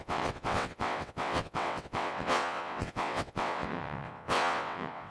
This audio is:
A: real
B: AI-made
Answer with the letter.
B